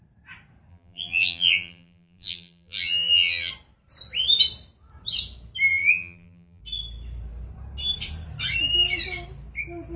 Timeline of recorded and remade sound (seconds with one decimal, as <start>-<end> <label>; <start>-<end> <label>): 0.0-0.7 recorded; 0.7-3.5 remade; 3.5-5.7 recorded; 5.7-6.6 remade; 6.6-10.0 recorded